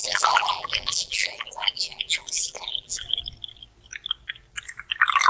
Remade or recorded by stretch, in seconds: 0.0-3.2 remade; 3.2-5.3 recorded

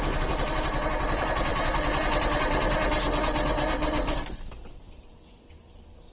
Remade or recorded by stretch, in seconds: 0.0-6.1 remade

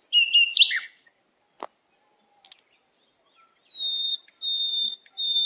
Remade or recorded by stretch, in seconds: 0.0-5.5 recorded